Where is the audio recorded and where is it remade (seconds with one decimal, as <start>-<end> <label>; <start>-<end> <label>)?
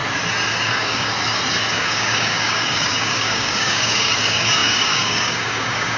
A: 0.0-0.6 recorded; 0.6-1.1 remade; 1.1-1.7 recorded; 1.7-6.0 remade